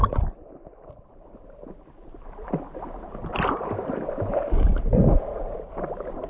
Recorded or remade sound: recorded